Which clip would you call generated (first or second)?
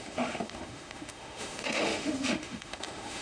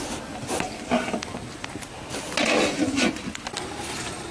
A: first